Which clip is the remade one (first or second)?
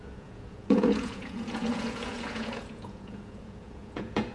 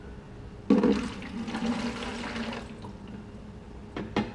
first